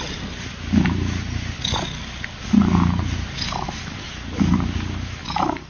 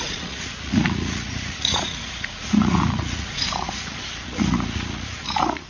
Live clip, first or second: first